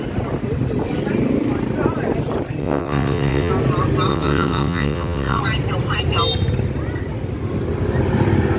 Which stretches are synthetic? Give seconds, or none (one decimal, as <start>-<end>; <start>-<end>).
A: 2.6-3.5; 4.1-5.4